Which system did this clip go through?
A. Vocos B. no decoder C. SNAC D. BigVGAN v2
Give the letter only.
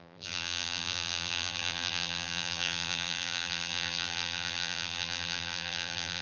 D